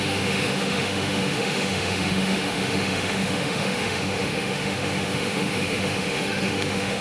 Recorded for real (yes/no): no